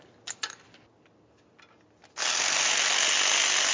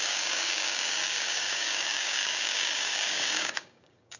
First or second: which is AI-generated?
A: second